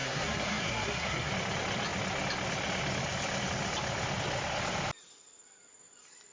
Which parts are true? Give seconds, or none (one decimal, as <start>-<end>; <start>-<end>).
1.3-6.3